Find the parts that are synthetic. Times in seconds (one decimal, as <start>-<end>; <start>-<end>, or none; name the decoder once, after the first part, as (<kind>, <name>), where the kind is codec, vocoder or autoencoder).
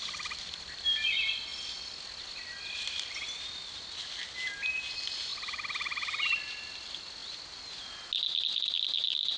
none